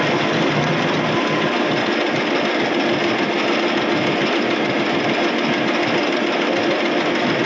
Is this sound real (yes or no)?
yes